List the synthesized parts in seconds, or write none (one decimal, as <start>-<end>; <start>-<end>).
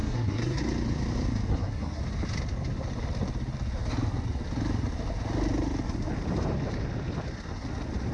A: 0.0-0.6; 1.5-2.0